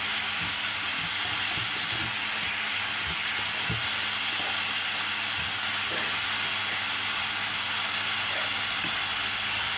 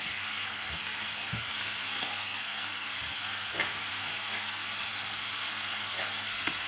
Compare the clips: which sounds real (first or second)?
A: first